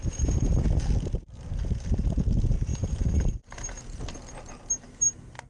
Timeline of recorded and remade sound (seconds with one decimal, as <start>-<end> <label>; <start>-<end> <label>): 0.0-0.6 remade; 0.6-2.7 recorded; 2.7-3.7 remade; 3.7-5.5 recorded